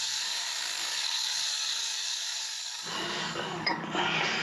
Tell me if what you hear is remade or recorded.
remade